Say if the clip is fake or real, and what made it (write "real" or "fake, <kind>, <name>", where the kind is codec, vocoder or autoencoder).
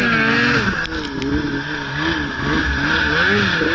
real